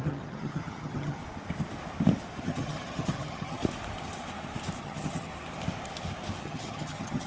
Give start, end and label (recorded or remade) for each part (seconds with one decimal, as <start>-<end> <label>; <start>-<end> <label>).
0.0-1.2 remade; 1.2-2.4 recorded; 2.4-3.6 remade; 3.6-4.8 recorded; 4.8-5.3 remade; 5.3-6.4 recorded; 6.4-7.3 remade